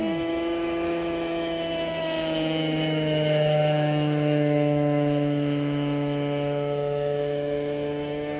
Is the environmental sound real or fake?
fake